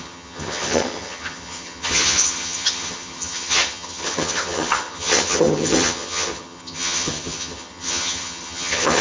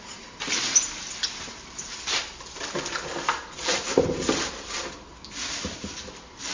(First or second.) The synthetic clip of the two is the first